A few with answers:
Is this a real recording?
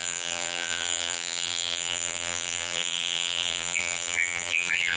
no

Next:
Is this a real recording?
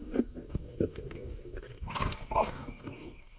no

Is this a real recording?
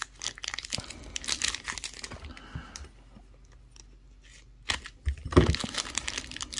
yes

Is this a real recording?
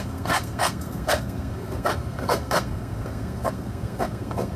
no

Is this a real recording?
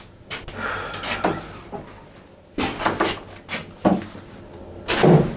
yes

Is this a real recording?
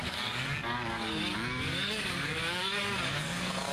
no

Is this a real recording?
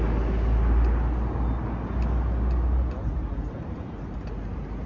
yes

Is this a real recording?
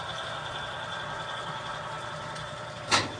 yes